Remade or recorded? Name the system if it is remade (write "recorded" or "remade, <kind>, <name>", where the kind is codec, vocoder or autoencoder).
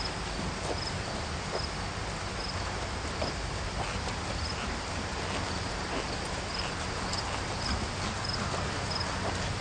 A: recorded